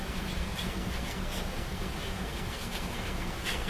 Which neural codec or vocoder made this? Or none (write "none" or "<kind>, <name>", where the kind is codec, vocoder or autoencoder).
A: codec, SNAC